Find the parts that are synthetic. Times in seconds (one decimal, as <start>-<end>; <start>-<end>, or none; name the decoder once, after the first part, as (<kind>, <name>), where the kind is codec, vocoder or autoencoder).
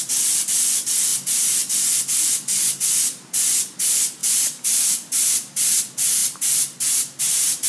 4.2-5.8 (vocoder, BigVGAN v2)